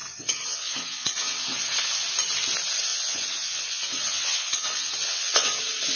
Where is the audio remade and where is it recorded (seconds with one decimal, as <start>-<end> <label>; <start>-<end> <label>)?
0.0-1.9 remade; 1.9-2.9 recorded; 2.9-5.6 remade; 5.6-6.0 recorded